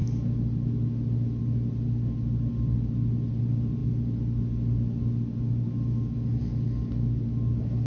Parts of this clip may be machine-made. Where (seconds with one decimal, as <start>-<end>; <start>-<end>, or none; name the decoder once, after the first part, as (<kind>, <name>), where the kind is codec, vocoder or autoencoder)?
none